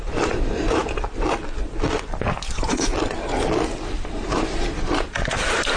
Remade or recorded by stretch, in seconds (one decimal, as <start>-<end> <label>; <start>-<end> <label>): 0.0-0.8 remade; 0.8-2.2 recorded; 2.2-2.9 remade; 2.9-4.1 recorded; 4.1-5.8 remade